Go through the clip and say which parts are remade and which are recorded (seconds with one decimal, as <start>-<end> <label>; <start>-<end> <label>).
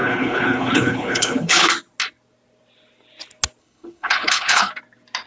0.0-1.7 remade; 1.7-3.6 recorded; 3.6-4.7 remade; 4.7-5.3 recorded